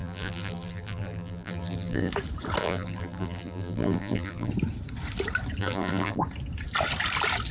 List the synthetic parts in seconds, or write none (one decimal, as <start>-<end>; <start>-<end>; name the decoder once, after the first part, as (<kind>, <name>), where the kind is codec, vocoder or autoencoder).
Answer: 0.0-2.1 (vocoder, BigVGAN v2); 2.6-4.5; 5.6-6.2